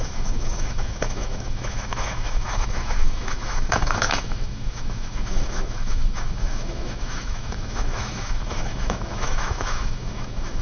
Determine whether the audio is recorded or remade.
remade